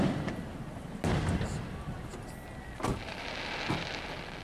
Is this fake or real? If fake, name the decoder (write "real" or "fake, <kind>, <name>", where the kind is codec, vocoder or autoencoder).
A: real